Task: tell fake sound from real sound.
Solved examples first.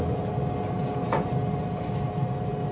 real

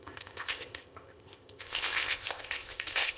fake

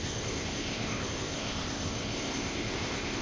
fake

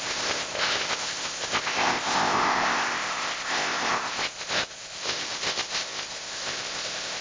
fake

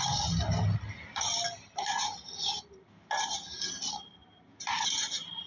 real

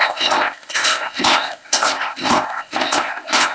fake